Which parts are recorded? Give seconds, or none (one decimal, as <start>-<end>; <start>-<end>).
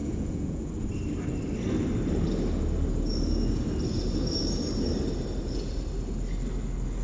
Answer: 0.6-7.0